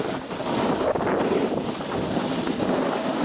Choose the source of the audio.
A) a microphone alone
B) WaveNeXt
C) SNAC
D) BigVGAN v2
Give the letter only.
A